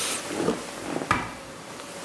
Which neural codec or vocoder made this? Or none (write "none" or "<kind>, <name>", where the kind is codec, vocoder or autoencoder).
none